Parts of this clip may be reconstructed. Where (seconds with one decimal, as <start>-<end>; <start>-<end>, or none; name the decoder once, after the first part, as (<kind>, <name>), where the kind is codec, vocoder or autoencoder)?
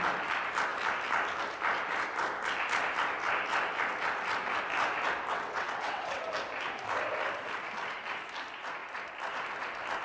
5.3-6.3 (vocoder, WaveNeXt)